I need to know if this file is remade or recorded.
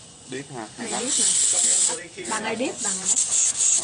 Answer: remade